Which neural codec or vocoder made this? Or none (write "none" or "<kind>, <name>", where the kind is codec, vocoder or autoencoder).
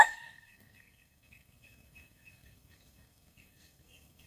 codec, SNAC